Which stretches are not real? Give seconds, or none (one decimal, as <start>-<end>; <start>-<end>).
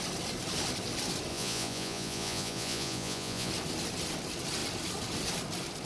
1.3-3.5